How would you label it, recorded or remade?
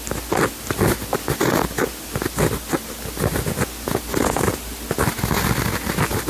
recorded